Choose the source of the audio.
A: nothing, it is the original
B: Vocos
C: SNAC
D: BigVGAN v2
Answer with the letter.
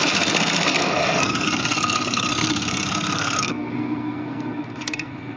C